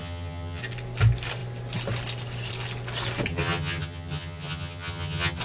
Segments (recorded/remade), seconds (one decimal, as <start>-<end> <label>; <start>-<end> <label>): 0.0-0.6 remade; 0.6-3.3 recorded; 3.3-5.4 remade